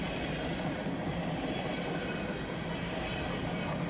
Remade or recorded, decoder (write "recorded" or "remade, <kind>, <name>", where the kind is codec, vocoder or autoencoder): recorded